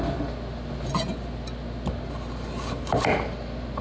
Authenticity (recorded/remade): recorded